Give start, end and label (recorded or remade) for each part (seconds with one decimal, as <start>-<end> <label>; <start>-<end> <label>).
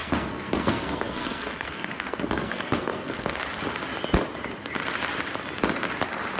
0.0-3.4 remade; 3.4-6.4 recorded